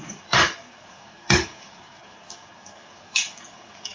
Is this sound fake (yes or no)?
yes